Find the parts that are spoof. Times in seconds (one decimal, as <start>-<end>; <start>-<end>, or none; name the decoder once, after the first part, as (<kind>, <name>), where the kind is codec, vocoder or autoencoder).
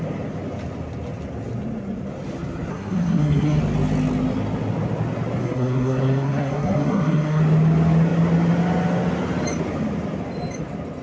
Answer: 2.7-3.6 (codec, SNAC); 5.4-7.4